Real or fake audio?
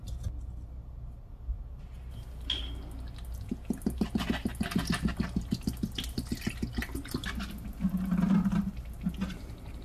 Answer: real